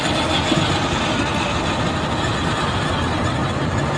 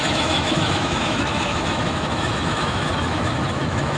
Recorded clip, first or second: first